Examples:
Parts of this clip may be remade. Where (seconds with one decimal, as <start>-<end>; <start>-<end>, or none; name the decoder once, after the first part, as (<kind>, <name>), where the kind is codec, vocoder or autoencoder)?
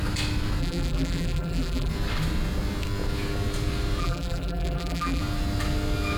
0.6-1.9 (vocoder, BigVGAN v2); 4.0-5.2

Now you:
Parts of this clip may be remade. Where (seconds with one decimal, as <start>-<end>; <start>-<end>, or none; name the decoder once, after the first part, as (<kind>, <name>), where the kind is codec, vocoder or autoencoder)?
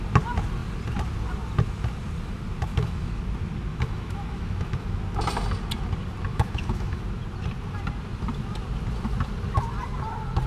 2.7-3.2 (autoencoder, DAC-VAE); 3.7-5.0; 6.3-7.0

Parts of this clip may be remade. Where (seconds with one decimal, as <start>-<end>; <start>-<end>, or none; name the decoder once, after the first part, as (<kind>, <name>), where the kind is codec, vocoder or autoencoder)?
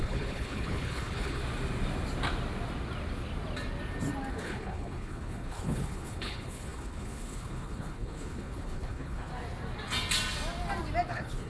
0.0-1.4 (codec, HILCodec); 4.3-9.3; 11.1-11.5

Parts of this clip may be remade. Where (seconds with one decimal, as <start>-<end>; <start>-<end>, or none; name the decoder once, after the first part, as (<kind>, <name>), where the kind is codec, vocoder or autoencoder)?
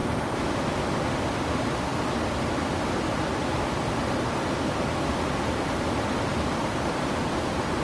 none